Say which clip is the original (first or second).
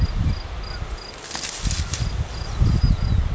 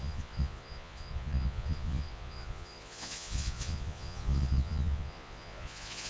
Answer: first